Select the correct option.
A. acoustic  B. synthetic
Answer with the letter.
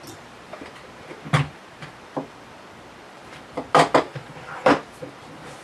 B